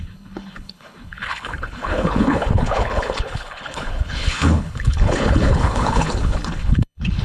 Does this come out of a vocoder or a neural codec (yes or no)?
yes